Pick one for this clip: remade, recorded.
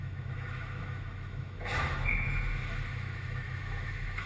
remade